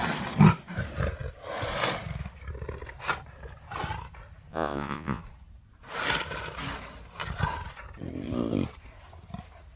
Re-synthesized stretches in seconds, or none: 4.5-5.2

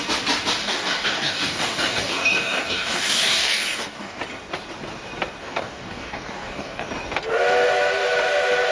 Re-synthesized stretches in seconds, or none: 0.6-4.2; 5.4-6.9

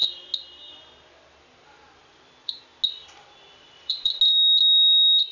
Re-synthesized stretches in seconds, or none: 2.0-2.6; 3.0-4.2

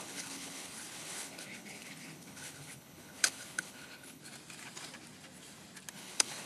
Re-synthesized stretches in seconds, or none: 0.0-4.2; 5.9-6.5

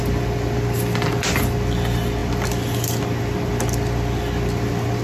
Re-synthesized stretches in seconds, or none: none